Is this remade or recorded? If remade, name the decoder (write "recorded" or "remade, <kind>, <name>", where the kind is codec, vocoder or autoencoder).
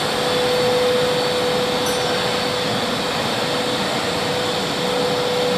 recorded